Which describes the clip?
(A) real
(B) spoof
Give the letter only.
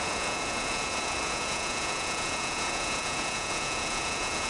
B